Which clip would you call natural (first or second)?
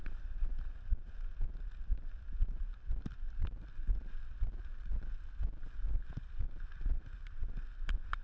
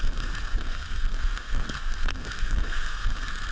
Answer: first